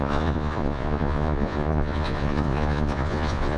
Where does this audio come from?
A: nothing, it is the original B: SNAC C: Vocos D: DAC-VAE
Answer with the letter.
C